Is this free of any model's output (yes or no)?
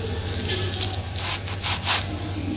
yes